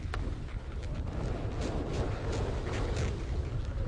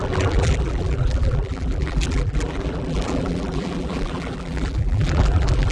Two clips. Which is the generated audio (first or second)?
second